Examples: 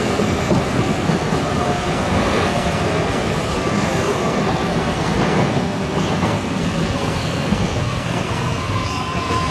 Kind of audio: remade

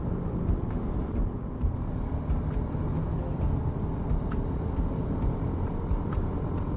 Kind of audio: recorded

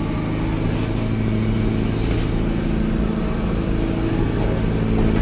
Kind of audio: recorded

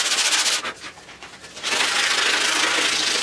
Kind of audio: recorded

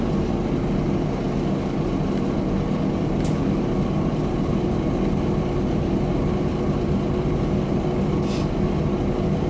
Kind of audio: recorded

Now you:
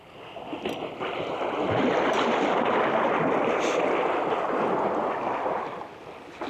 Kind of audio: recorded